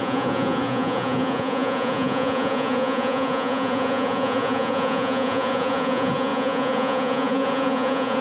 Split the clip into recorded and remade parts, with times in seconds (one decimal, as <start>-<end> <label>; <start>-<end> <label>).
0.0-8.2 remade